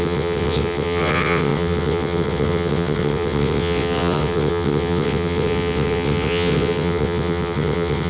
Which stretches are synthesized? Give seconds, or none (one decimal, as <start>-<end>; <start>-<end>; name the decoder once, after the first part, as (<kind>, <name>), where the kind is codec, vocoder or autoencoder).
0.0-8.1 (vocoder, WaveNeXt)